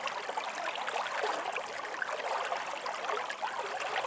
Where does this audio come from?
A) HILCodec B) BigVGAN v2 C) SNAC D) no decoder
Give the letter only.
D